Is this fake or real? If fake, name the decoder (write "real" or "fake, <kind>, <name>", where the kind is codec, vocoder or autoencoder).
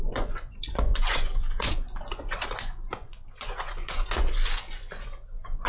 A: fake, vocoder, Vocos